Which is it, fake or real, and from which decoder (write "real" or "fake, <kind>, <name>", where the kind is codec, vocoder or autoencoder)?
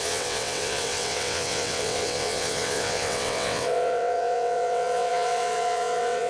fake, vocoder, WaveNeXt